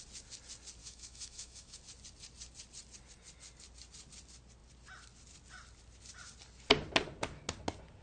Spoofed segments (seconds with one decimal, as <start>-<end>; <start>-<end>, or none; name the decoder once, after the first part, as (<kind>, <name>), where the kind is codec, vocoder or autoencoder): 0.8-1.8 (autoencoder, DAC-VAE)